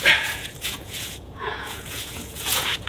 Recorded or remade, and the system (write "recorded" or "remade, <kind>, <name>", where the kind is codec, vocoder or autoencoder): remade, vocoder, Vocos